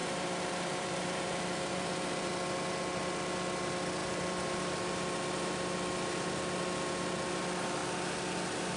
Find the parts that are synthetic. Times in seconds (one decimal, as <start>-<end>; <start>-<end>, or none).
0.0-2.3